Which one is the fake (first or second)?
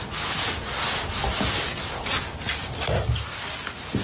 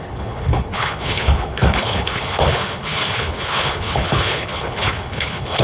second